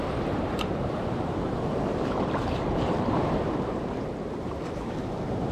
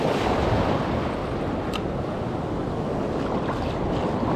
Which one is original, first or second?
second